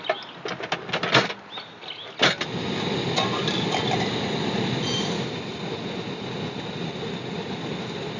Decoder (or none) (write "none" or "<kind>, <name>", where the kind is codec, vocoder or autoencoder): none